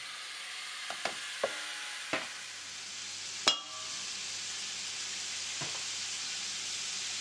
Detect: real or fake real